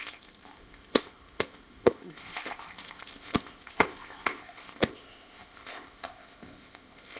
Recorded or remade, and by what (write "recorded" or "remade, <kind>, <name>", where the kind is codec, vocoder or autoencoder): remade, codec, ZipCodec